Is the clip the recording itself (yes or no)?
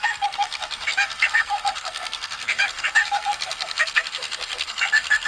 no